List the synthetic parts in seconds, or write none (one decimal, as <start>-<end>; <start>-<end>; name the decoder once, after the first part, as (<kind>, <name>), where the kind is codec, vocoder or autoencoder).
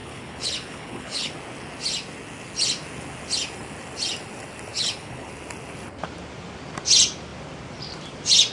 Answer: 0.0-1.3 (codec, HILCodec); 4.7-5.3